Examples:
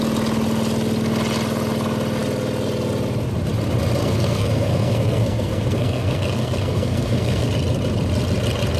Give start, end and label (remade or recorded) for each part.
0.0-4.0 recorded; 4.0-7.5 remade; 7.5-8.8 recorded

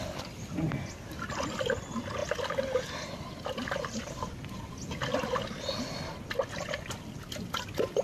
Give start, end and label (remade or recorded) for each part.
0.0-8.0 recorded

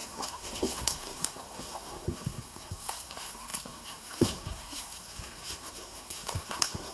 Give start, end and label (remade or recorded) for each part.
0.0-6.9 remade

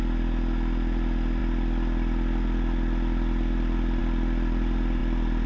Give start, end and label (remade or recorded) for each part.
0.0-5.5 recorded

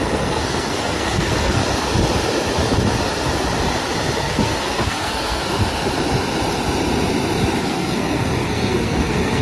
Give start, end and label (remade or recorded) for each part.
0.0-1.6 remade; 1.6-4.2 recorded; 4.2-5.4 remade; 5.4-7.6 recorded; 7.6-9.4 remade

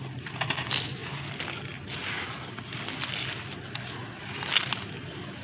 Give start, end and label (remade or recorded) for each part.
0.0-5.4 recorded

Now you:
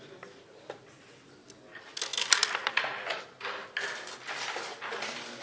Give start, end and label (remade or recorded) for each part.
0.0-5.4 recorded

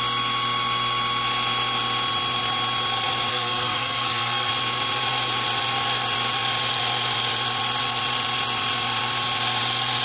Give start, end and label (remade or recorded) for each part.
0.0-3.3 recorded; 3.3-4.5 remade; 4.5-10.0 recorded